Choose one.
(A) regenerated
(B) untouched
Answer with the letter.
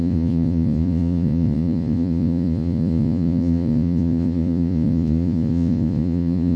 A